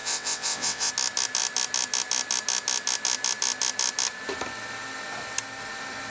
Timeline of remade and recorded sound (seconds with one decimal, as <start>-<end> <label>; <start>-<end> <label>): 0.0-0.9 remade; 0.9-6.1 recorded